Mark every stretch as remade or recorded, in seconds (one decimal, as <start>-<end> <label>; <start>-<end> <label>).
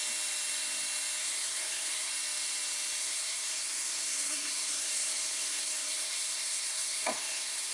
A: 0.0-1.2 recorded; 1.2-2.1 remade; 2.1-3.0 recorded; 3.0-7.7 remade